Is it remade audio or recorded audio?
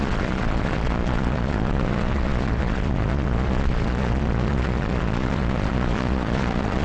remade